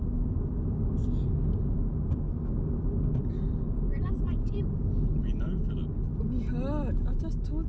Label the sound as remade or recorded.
recorded